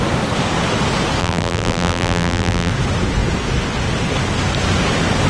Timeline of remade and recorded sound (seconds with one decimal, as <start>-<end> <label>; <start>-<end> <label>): 0.0-1.2 recorded; 1.2-2.7 remade; 2.7-5.3 recorded